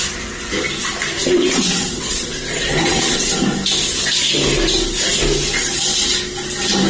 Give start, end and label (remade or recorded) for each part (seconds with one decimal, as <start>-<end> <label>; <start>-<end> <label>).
0.0-1.2 recorded; 1.2-3.3 remade; 3.3-6.9 recorded